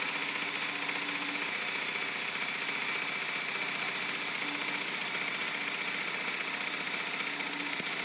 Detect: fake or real real